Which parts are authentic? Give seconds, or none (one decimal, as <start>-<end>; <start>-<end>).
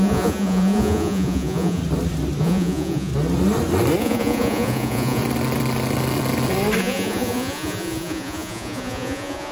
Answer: 1.8-2.4; 3.1-4.0; 5.2-6.8